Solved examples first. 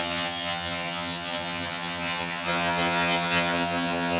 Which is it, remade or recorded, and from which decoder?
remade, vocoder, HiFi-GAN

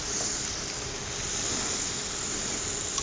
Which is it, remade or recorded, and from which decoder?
recorded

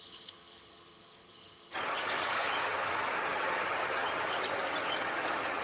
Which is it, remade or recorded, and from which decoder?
remade, vocoder, HiFi-GAN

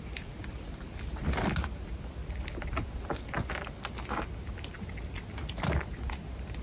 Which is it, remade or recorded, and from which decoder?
recorded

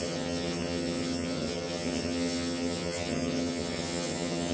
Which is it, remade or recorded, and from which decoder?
remade, vocoder, HiFi-GAN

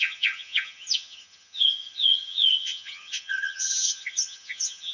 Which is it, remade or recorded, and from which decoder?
remade, vocoder, HiFi-GAN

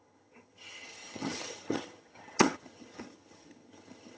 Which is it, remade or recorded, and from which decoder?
remade, vocoder, HiFi-GAN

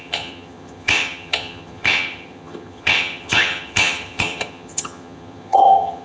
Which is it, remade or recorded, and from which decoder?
remade, vocoder, HiFi-GAN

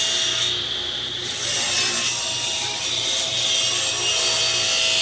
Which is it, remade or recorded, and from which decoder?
recorded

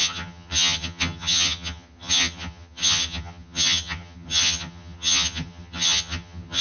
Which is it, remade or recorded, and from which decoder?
remade, vocoder, HiFi-GAN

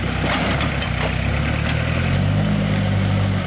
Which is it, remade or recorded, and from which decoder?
recorded